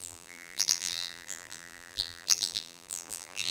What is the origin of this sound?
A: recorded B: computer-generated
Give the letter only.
B